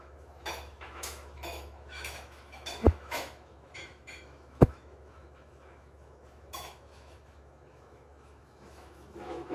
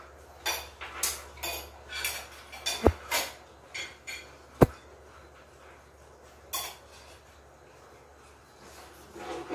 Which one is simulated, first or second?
first